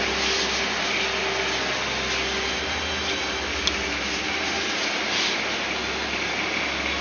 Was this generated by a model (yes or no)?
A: no